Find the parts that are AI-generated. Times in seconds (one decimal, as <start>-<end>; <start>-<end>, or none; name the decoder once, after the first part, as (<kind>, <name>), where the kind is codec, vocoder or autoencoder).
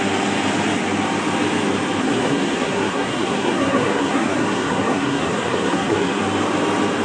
2.0-6.2 (codec, SNAC)